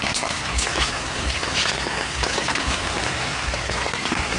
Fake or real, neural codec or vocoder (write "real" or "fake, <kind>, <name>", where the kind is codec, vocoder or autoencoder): fake, codec, SNAC